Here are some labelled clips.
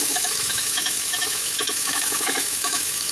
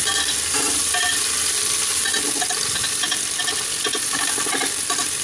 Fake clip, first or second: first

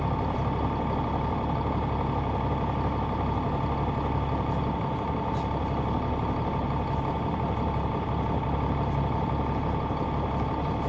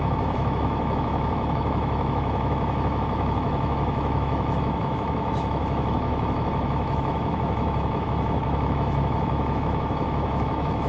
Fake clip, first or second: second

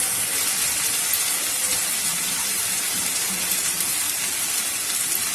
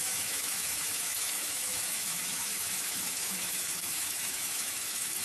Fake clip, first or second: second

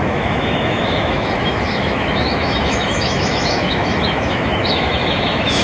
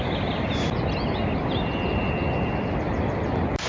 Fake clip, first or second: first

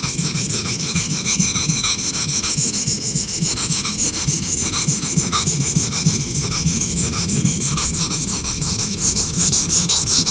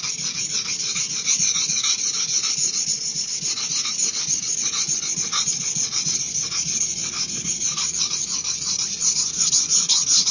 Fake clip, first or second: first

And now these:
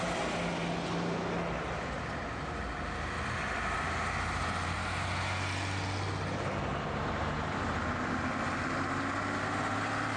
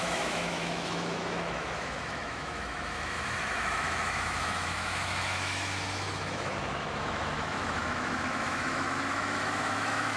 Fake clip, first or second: second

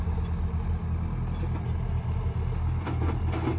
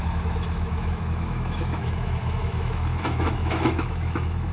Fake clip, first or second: second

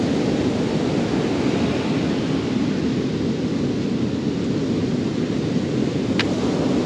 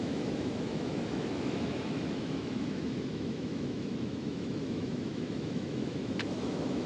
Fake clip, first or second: second